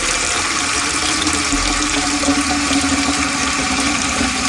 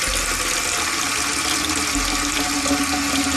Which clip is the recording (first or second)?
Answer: second